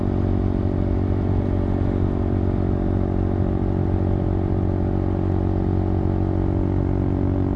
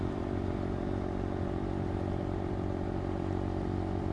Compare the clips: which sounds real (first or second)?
first